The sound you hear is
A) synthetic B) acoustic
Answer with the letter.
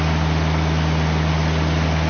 B